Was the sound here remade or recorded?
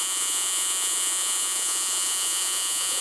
remade